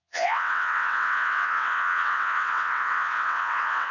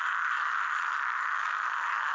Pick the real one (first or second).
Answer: second